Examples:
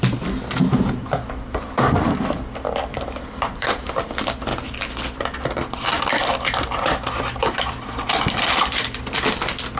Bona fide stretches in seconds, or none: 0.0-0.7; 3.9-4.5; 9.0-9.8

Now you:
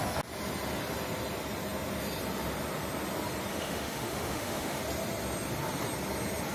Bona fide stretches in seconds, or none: 0.0-3.5; 4.8-6.5

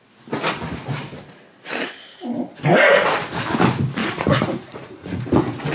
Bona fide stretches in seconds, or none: 0.0-4.0; 5.3-5.7

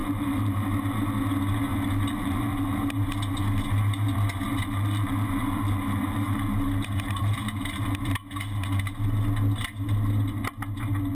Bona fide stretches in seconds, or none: 0.7-1.7; 2.9-4.5; 8.1-11.1

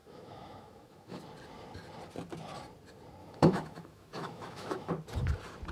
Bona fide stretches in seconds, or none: 1.2-3.2; 4.9-5.7

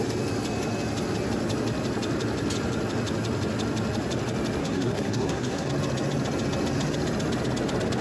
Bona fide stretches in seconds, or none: 0.0-4.6; 5.7-8.0